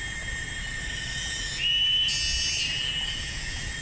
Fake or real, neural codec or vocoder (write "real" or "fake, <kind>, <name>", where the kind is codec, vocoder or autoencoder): real